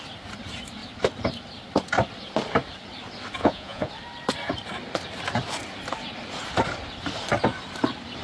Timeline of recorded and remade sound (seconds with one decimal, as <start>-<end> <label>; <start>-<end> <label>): 0.0-3.4 recorded; 3.4-3.9 remade; 3.9-8.2 recorded